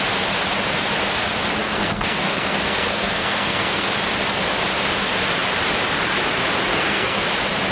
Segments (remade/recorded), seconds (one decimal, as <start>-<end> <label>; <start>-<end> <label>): 0.0-1.6 recorded; 1.6-3.9 remade; 3.9-6.7 recorded; 6.7-7.2 remade; 7.2-7.7 recorded